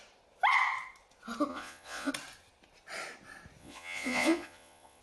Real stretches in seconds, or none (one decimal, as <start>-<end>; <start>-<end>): 0.0-1.5; 2.1-3.6